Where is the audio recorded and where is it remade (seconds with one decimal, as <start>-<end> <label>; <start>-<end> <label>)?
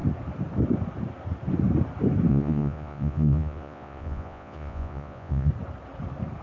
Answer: 0.0-2.3 recorded; 2.3-5.5 remade; 5.5-6.4 recorded